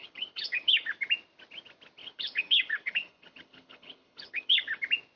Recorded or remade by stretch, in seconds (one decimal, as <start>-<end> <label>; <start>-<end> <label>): 0.0-0.9 remade; 0.9-2.0 recorded; 2.0-4.8 remade; 4.8-5.2 recorded